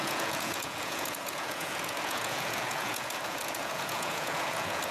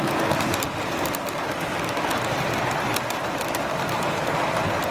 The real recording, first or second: second